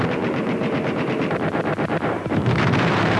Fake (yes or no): yes